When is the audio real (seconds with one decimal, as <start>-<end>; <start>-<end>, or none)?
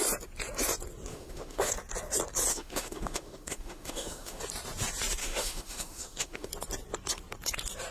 0.0-1.1; 1.7-2.5; 4.4-5.2; 6.5-7.9